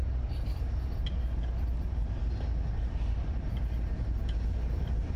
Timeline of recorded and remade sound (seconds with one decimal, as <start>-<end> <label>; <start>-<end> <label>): 0.0-5.2 recorded